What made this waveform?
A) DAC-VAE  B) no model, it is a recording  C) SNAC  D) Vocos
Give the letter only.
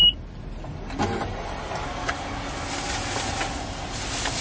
B